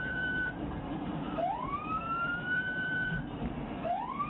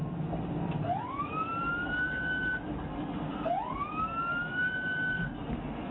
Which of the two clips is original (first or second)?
second